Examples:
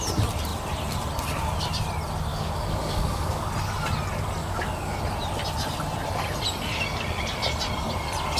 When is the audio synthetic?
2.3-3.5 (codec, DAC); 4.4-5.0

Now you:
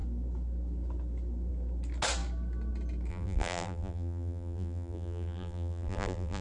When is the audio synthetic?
3.1-6.4 (vocoder, BigVGAN v2)

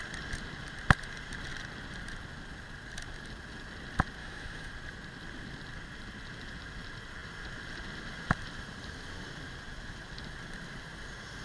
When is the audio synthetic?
4.2-4.7 (autoencoder, DAC-VAE)